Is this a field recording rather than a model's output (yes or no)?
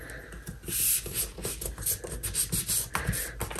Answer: yes